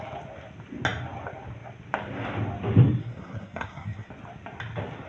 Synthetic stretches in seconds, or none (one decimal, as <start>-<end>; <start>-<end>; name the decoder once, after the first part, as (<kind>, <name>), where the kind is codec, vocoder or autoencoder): 3.0-4.1 (codec, SNAC)